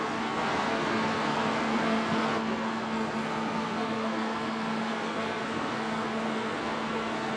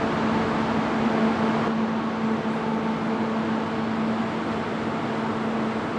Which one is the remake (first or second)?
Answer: first